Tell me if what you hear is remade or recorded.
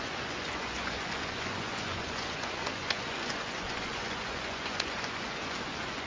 remade